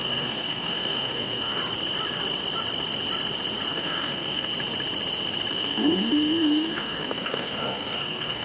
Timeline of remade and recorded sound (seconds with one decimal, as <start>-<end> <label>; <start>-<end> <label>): 0.0-1.6 remade; 1.6-3.7 recorded; 3.7-4.5 remade; 4.5-5.5 recorded; 5.5-8.4 remade